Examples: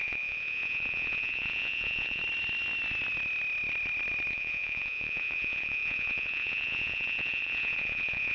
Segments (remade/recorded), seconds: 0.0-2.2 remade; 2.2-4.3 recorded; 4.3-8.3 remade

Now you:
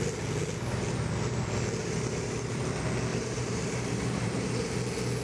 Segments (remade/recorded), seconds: 0.0-1.8 recorded; 1.8-2.6 remade; 2.6-3.1 recorded; 3.1-4.7 remade; 4.7-5.2 recorded

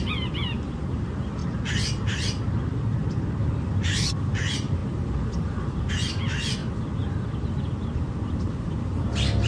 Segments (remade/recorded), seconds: 0.0-1.4 remade; 1.4-3.6 recorded; 3.6-6.6 remade; 6.6-8.5 recorded; 8.5-9.5 remade

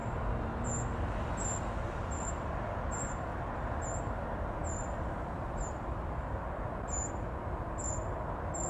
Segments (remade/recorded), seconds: 0.0-0.8 remade; 0.8-4.6 recorded; 4.6-6.6 remade; 6.6-8.7 recorded